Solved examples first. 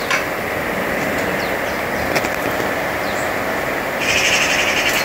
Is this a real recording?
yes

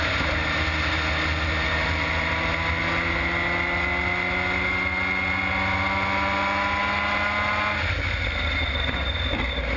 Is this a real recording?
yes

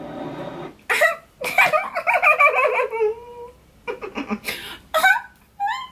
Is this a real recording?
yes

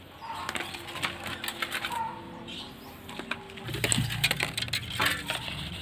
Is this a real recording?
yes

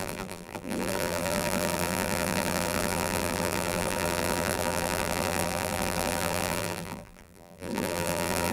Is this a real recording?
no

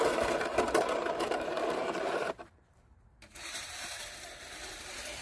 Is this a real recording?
no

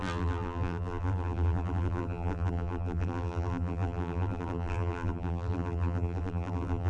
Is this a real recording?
no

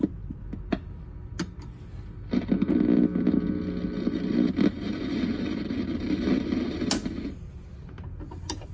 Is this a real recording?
yes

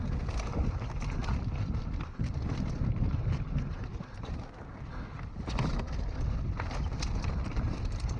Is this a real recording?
yes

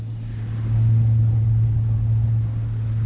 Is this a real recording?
yes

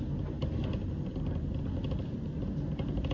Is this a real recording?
yes